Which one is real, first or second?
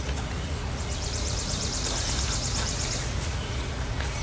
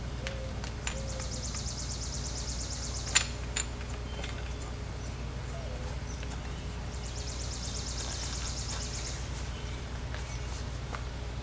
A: second